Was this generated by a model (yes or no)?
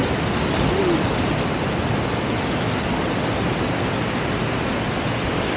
no